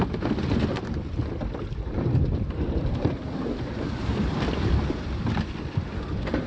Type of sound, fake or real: fake